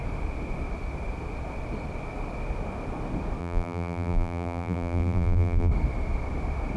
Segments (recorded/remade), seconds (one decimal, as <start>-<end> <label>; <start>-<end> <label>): 0.0-3.4 recorded; 3.4-5.7 remade; 5.7-6.8 recorded